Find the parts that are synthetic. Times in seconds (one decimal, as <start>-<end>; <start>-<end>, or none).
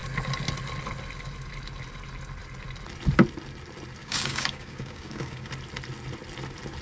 4.0-5.5